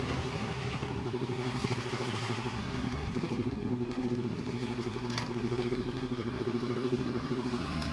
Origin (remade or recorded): remade